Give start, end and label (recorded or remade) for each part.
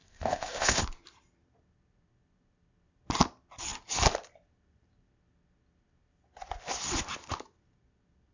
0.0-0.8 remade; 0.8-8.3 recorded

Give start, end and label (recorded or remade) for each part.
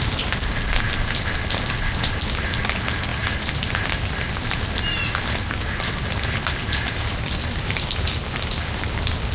0.0-9.3 recorded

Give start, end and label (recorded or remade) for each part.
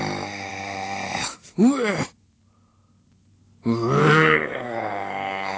0.0-4.0 recorded; 4.0-5.6 remade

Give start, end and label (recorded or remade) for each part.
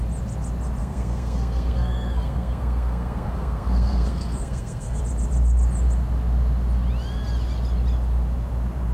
0.0-0.8 recorded; 0.8-5.0 remade; 5.0-8.9 recorded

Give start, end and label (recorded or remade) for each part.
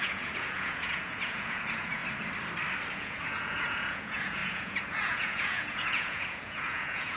0.0-2.0 remade; 2.0-2.9 recorded; 2.9-7.2 remade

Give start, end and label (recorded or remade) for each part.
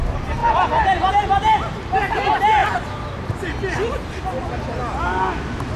0.0-5.8 recorded